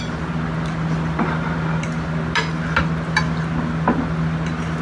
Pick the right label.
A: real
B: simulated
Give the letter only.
A